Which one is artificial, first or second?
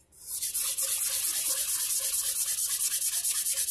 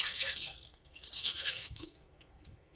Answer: second